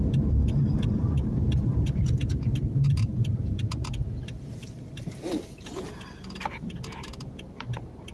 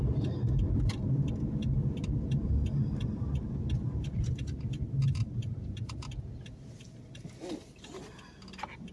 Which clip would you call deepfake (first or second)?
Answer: first